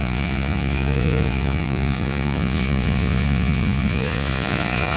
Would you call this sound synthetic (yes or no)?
yes